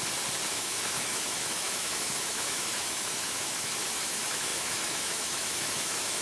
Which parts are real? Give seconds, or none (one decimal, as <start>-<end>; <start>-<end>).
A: 0.0-0.5